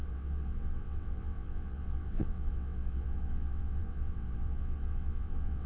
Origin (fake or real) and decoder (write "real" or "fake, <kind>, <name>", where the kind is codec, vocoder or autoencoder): fake, vocoder, WaveNeXt